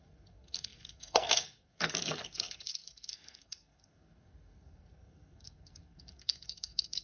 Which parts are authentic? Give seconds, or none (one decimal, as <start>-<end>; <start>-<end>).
none